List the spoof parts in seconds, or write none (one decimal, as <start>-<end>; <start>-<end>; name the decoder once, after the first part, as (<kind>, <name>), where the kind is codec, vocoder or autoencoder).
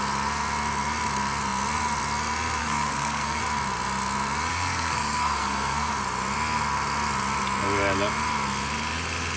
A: 2.6-3.4 (codec, SNAC); 4.5-5.9